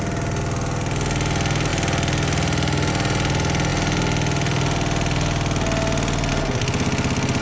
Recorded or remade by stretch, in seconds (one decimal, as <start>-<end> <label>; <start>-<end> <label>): 0.0-7.4 recorded